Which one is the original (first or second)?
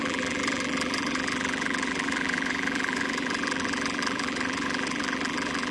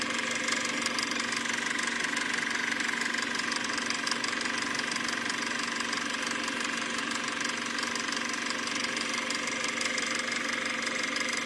second